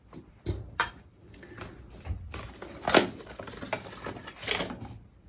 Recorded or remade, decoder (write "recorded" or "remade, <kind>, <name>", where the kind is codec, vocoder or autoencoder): remade, vocoder, BigVGAN v2